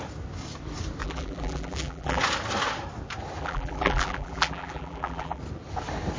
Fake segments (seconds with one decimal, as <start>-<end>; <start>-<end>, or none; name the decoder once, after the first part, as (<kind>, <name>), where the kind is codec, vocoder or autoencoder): 1.0-2.2 (vocoder, BigVGAN v2); 3.4-5.4